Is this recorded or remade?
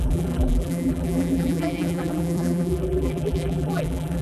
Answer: remade